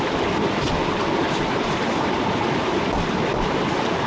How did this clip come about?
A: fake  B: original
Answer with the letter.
B